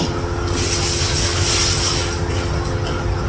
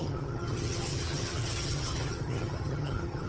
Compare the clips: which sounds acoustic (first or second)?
first